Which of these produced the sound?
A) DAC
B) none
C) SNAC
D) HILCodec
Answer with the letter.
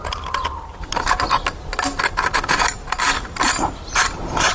B